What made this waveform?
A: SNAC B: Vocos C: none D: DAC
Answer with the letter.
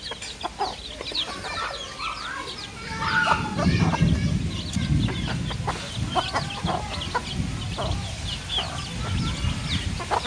C